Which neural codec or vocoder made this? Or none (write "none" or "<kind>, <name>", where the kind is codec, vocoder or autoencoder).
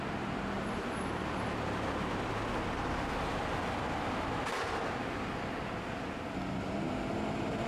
none